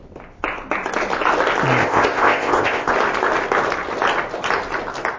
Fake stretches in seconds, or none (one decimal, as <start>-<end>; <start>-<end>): 1.8-2.9